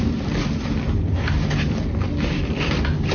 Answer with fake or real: real